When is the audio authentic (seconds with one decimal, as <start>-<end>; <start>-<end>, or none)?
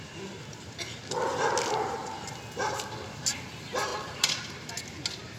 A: 0.0-5.4